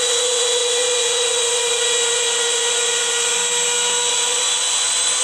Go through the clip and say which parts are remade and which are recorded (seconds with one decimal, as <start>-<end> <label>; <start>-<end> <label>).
0.0-3.4 remade; 3.4-4.1 recorded; 4.1-5.2 remade